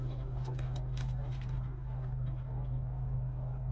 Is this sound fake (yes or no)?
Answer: yes